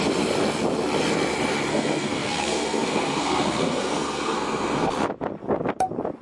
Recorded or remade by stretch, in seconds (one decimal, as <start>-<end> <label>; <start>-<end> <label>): 0.0-1.7 recorded; 1.7-4.9 remade; 4.9-6.2 recorded